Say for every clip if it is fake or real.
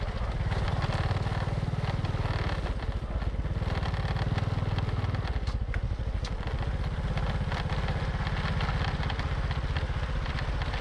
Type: real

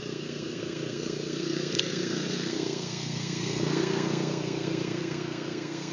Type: fake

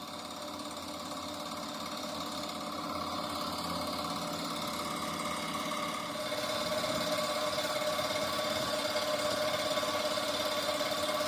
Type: real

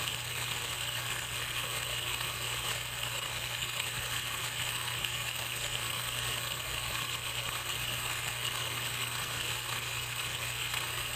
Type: fake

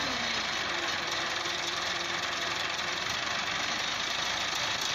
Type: real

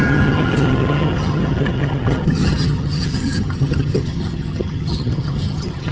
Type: fake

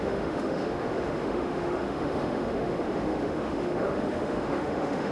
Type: fake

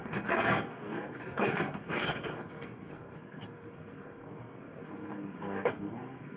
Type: fake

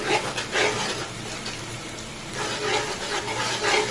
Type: real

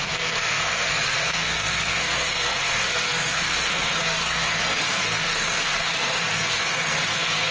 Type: fake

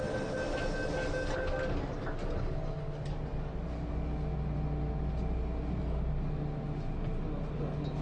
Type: real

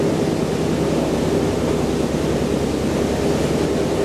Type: real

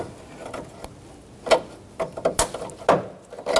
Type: real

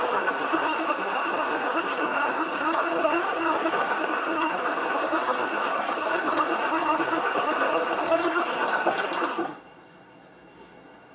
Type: fake